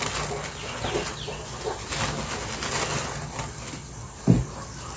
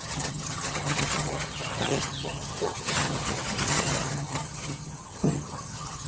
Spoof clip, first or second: second